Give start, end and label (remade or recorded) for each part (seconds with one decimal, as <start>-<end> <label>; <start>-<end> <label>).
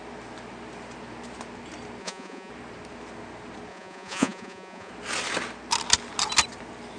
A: 0.0-2.0 recorded; 2.0-2.5 remade; 2.5-3.7 recorded; 3.7-4.9 remade; 4.9-7.0 recorded